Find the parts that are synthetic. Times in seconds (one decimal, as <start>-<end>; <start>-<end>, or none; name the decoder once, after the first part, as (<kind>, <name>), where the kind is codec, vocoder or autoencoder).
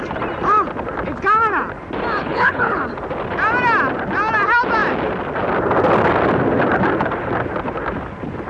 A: 2.2-2.8 (codec, HILCodec)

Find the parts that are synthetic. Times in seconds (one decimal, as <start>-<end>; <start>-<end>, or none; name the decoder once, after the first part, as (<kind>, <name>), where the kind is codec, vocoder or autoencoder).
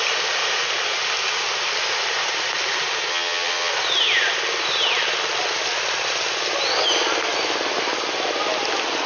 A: 3.1-3.7 (vocoder, HiFi-GAN)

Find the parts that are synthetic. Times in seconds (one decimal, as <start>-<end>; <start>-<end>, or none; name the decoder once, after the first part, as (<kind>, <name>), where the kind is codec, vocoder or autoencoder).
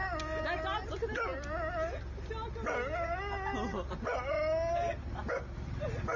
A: none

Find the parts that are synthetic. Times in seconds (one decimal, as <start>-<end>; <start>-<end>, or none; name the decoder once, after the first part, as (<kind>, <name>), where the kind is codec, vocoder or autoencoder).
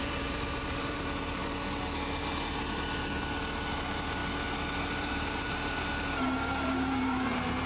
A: 0.0-1.4 (vocoder, BigVGAN v2); 3.7-4.2; 4.8-7.7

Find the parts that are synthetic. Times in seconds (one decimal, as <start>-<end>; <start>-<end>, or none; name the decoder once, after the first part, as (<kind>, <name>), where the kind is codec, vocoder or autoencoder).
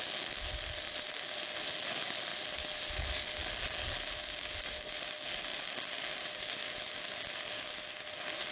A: none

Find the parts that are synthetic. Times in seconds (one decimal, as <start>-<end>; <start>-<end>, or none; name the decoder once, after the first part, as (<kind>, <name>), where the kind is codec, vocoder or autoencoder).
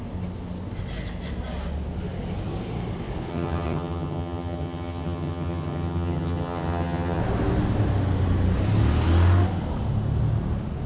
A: 3.3-7.2 (vocoder, HiFi-GAN)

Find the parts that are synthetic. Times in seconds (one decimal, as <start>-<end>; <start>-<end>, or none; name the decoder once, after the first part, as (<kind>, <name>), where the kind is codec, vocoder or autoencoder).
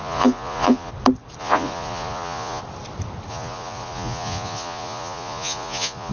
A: 0.0-0.9 (vocoder, Vocos); 1.4-2.6; 3.3-6.1